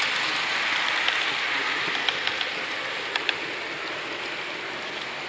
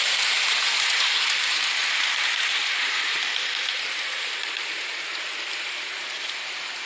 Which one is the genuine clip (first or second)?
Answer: first